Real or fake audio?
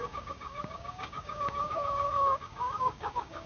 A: fake